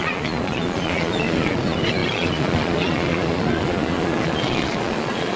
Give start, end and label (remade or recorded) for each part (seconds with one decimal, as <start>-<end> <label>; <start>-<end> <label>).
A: 0.0-5.4 remade